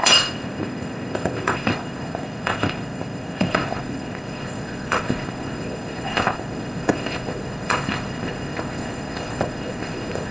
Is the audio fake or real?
fake